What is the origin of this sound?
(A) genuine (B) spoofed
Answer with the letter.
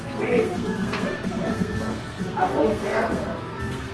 B